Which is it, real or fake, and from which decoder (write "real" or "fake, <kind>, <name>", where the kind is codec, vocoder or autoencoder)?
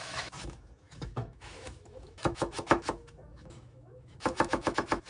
fake, autoencoder, DAC-VAE